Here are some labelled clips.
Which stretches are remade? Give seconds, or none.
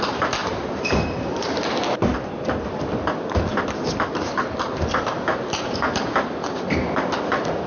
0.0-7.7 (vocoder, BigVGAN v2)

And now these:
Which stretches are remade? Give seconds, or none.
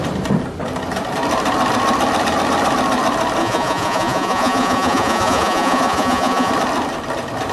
3.4-6.5 (vocoder, Vocos)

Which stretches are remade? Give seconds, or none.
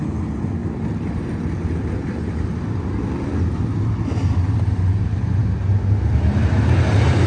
0.6-5.0 (vocoder, BigVGAN v2)